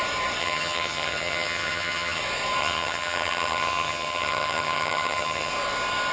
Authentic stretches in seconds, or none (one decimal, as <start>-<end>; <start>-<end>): 0.0-0.4; 2.2-2.6; 5.5-6.1